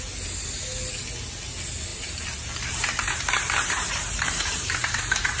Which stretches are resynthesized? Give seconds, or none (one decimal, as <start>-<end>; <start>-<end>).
1.9-5.4